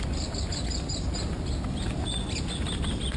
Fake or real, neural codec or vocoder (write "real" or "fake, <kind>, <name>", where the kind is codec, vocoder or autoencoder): real